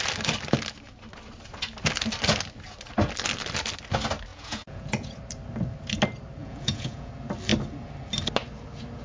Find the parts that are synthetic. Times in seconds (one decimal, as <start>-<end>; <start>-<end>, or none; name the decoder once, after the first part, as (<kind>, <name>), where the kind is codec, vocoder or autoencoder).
4.3-5.2 (vocoder, Vocos); 6.4-7.1